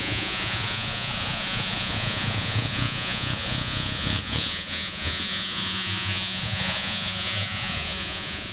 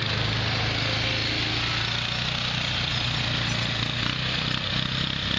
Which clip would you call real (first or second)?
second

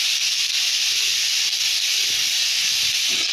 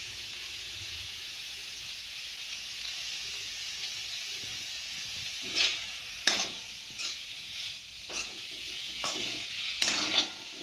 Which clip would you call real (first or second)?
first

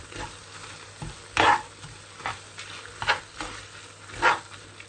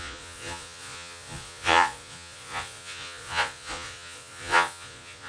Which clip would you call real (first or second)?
first